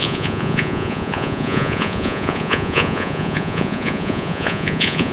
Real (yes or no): no